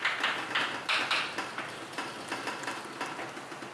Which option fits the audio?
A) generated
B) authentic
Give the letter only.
B